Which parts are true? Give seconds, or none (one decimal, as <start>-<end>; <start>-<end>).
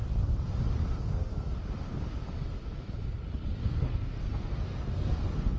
0.0-0.9; 1.3-3.6